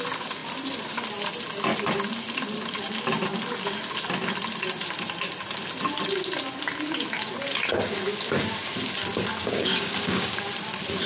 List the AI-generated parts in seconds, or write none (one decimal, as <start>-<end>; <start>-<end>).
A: 9.4-10.4